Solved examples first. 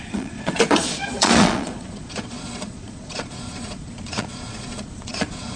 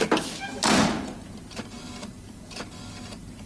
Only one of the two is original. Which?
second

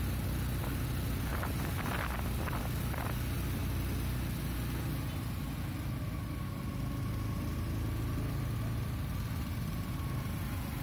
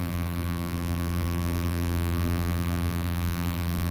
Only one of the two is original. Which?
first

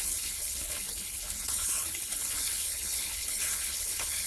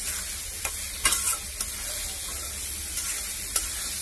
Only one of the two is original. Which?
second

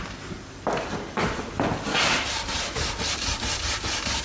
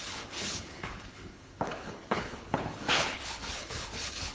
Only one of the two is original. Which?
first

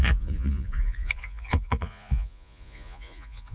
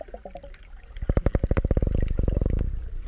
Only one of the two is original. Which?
second